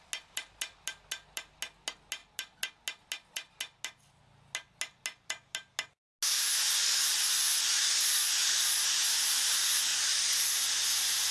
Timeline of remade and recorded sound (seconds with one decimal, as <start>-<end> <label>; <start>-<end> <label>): 0.0-11.3 recorded

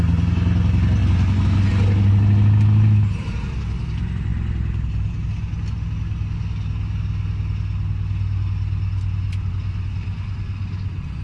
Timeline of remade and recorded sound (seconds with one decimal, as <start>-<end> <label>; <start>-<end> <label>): 0.0-11.2 recorded

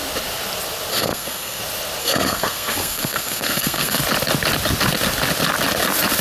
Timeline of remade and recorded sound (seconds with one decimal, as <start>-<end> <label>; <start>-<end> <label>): 0.0-0.9 recorded; 0.9-1.6 remade; 1.6-2.0 recorded; 2.0-4.0 remade; 4.0-6.2 recorded

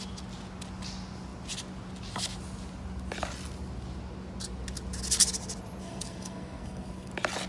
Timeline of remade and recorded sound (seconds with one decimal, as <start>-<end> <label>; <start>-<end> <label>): 0.0-5.8 recorded; 5.8-7.1 remade; 7.1-7.5 recorded

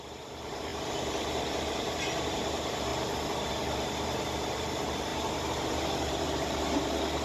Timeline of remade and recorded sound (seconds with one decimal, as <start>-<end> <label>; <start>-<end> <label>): 0.0-2.9 remade; 2.9-3.5 recorded; 3.5-7.2 remade

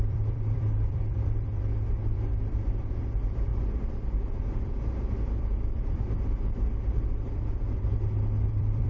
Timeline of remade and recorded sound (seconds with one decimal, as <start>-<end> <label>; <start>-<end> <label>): 0.0-3.5 remade; 3.5-4.4 recorded; 4.4-7.9 remade; 7.9-8.5 recorded; 8.5-8.9 remade

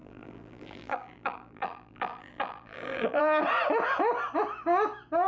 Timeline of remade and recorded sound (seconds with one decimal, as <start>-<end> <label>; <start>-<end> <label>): 0.0-3.2 remade; 3.2-5.3 recorded